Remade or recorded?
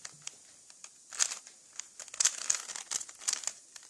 recorded